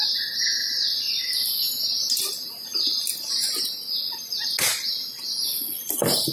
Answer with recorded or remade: recorded